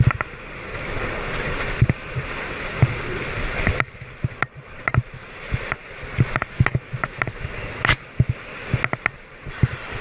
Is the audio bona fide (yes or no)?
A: yes